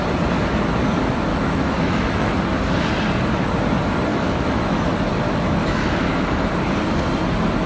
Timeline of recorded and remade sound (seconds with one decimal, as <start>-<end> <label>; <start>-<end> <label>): 0.0-1.3 recorded; 1.3-2.3 remade; 2.3-4.1 recorded; 4.1-4.8 remade; 4.8-5.6 recorded; 5.6-6.5 remade; 6.5-7.7 recorded